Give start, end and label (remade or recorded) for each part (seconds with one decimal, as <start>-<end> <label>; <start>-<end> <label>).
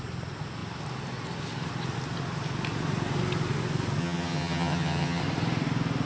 0.0-4.0 recorded; 4.0-5.2 remade; 5.2-6.1 recorded